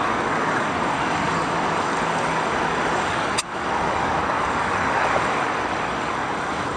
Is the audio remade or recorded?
remade